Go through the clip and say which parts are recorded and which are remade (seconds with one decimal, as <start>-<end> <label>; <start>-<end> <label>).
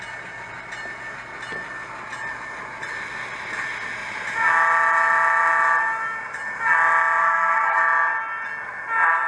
0.0-7.2 recorded; 7.2-7.8 remade; 7.8-9.3 recorded